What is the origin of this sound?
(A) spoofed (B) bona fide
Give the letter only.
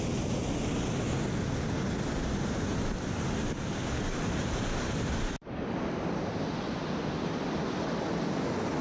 B